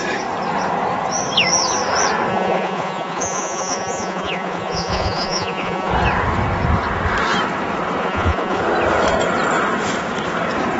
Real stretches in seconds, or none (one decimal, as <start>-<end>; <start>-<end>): 0.0-2.3; 5.9-8.0; 8.6-10.8